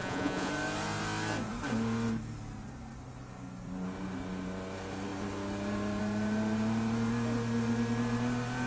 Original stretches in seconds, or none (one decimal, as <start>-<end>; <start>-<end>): 0.5-8.7